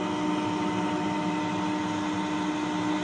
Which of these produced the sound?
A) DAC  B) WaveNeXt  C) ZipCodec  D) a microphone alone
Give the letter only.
D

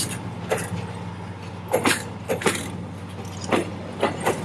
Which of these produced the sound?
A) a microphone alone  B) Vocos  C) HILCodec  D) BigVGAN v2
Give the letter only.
A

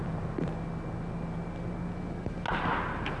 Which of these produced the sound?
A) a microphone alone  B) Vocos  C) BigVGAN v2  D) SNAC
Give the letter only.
A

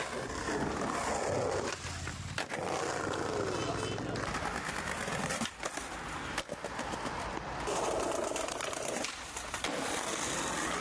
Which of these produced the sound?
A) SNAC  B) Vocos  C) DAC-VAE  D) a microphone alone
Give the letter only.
D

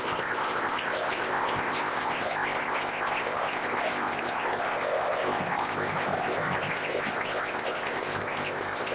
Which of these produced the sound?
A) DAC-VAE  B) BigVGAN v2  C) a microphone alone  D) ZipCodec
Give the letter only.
D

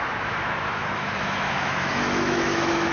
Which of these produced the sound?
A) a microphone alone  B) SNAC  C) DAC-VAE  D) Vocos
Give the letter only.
C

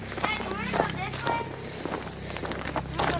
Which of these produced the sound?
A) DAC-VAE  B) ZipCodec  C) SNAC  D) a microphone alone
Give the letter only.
D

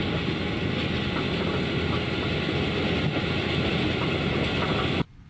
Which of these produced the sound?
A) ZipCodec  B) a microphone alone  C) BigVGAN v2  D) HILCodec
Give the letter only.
B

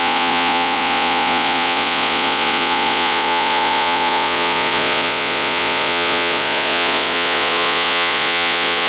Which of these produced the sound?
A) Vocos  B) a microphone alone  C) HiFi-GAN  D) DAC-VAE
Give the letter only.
A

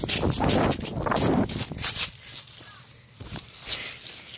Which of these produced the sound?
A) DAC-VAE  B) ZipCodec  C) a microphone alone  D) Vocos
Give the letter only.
C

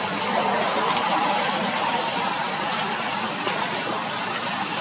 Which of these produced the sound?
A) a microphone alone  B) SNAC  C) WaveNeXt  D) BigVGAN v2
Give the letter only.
D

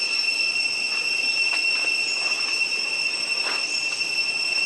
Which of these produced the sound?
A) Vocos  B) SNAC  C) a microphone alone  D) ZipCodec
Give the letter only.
C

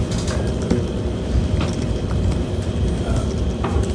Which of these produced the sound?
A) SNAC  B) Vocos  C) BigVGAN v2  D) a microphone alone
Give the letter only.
C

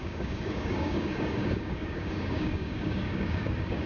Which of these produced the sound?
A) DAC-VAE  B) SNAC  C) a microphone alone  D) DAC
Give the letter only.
D